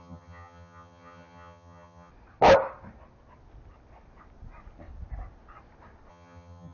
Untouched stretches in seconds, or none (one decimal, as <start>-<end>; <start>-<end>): 2.1-6.1